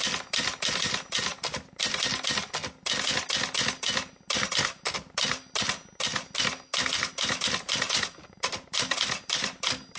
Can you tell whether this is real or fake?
real